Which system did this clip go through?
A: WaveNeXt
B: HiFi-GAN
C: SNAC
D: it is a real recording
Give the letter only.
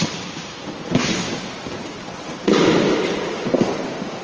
D